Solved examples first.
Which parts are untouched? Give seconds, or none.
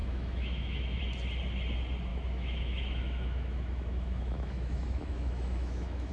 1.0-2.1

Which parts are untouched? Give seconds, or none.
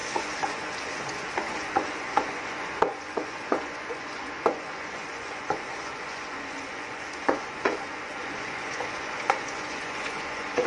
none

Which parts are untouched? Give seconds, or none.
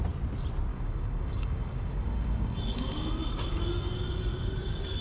0.0-0.7; 3.7-4.3